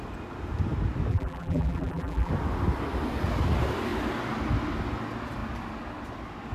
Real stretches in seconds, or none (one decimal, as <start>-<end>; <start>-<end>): 0.0-1.1; 2.3-6.5